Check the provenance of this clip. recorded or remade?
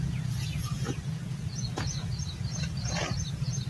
remade